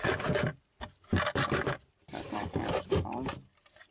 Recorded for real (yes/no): yes